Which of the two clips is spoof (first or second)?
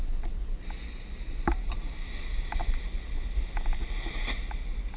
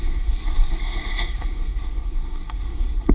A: second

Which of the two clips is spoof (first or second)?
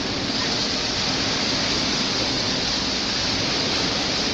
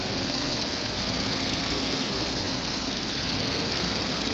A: second